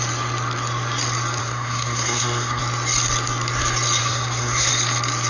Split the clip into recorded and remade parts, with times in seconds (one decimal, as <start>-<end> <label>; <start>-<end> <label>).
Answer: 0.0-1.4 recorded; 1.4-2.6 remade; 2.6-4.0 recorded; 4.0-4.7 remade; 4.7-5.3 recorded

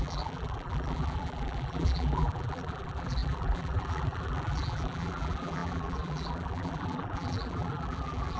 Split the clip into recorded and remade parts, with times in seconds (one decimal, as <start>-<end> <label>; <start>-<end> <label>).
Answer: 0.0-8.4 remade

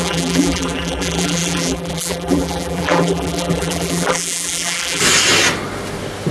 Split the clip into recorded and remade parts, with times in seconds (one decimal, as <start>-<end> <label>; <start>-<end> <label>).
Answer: 0.0-5.0 remade; 5.0-6.3 recorded